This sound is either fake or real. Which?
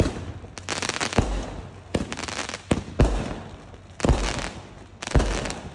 real